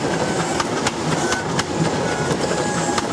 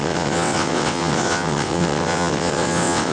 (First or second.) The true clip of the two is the first